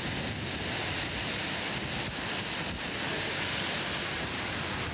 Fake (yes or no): no